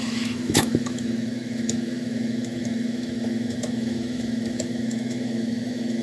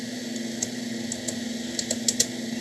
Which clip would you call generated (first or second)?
first